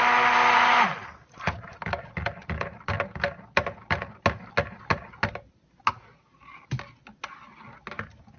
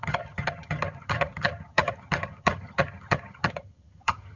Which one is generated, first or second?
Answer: second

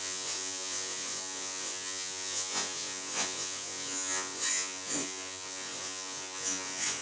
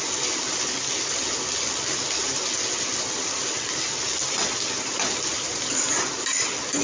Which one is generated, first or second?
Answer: first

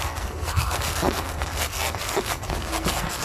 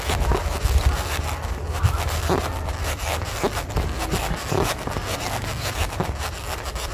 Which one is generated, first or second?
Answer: first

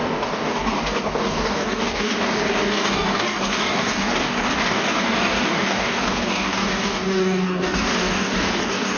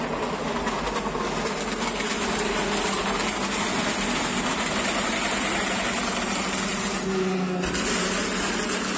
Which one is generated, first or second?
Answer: first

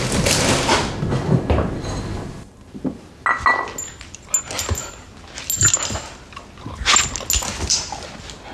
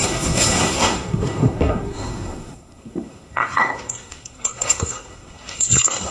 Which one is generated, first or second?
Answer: second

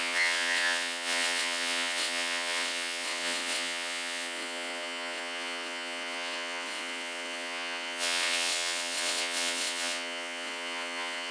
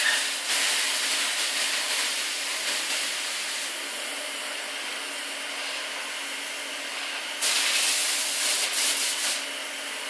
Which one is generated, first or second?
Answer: first